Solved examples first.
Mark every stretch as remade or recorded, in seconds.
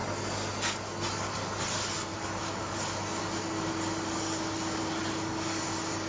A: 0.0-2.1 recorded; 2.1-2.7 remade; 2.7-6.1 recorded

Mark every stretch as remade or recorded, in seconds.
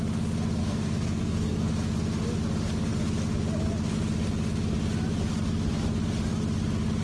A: 0.0-0.6 recorded; 0.6-1.7 remade; 1.7-7.0 recorded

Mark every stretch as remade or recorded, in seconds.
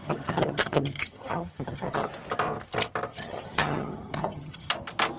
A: 0.0-2.1 remade; 2.1-3.1 recorded; 3.1-4.7 remade; 4.7-5.2 recorded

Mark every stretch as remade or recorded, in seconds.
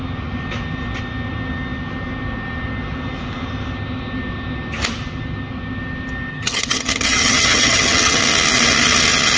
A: 0.0-6.3 recorded; 6.3-8.2 remade; 8.2-9.4 recorded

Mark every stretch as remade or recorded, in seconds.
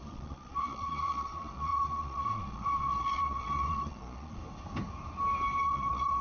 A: 0.0-4.4 remade; 4.4-5.6 recorded; 5.6-6.2 remade